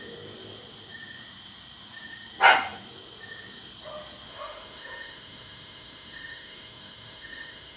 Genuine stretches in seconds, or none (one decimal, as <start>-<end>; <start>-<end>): 0.0-4.3

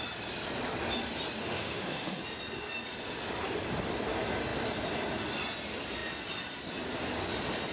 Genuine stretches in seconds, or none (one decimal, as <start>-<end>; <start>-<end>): 0.0-1.4; 2.2-7.7

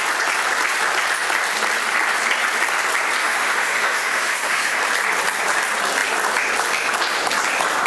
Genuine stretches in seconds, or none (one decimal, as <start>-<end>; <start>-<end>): 0.0-3.2; 4.8-7.9

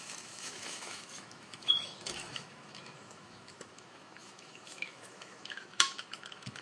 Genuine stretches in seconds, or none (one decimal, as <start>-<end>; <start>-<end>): none

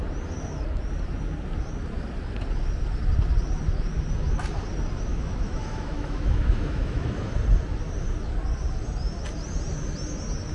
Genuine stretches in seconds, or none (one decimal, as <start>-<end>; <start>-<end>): 0.0-5.1; 7.3-10.5

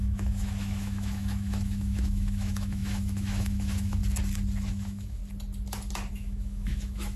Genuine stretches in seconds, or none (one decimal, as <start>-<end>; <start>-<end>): 4.0-4.7; 5.2-6.1

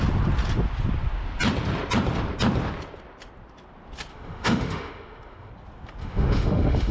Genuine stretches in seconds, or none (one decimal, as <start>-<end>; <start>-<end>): 0.0-4.1; 5.5-6.0